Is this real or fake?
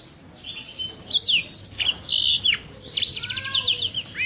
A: real